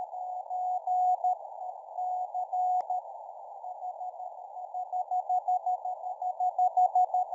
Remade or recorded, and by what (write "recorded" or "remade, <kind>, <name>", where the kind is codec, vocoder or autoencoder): recorded